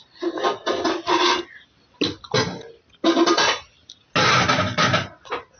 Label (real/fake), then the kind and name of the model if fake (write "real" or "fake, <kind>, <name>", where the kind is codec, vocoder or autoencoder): real